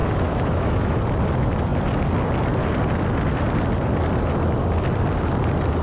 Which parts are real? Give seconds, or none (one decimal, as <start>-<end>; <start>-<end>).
1.0-5.8